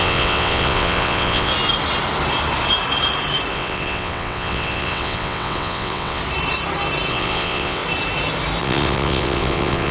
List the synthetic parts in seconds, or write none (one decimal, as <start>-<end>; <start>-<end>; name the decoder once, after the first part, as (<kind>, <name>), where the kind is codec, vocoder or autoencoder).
0.0-1.5 (vocoder, WaveNeXt); 3.5-6.2; 7.1-7.8; 8.6-9.9